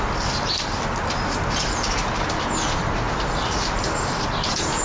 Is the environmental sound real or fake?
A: real